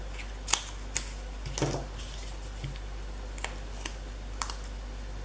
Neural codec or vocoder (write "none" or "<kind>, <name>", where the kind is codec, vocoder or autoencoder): none